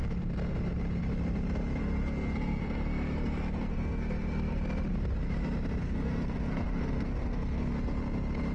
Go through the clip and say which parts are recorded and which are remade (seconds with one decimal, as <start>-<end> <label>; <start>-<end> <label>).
0.0-1.8 recorded; 1.8-4.6 remade; 4.6-5.8 recorded; 5.8-7.7 remade; 7.7-8.5 recorded